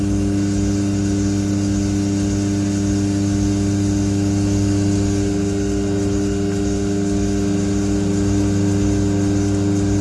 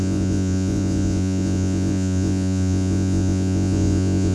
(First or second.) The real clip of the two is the first